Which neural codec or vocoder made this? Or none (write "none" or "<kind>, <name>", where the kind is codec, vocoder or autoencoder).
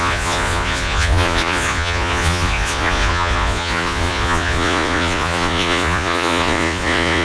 vocoder, Vocos